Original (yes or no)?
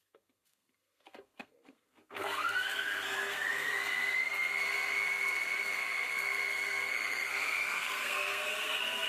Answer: no